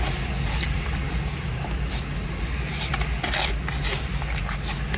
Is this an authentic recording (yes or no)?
yes